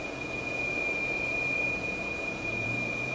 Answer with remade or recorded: remade